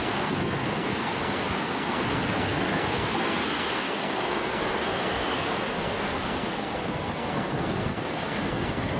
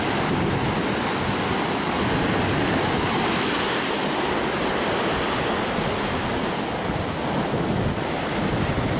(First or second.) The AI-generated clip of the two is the first